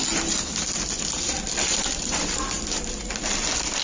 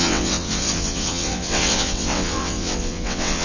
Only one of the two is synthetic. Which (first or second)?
second